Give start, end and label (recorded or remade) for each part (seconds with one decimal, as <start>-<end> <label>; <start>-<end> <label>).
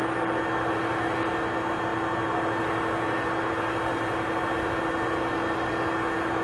0.0-6.4 recorded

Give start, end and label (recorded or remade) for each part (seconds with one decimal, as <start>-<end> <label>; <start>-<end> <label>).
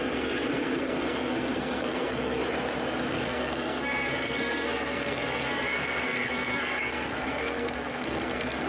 0.0-2.4 remade; 2.4-3.1 recorded; 3.1-8.7 remade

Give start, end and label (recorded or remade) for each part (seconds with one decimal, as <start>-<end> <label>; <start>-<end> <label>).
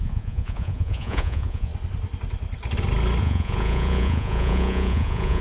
0.0-1.7 remade; 1.7-3.2 recorded; 3.2-5.4 remade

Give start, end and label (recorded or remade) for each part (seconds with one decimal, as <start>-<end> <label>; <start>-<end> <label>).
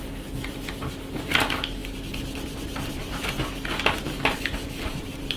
0.0-5.4 recorded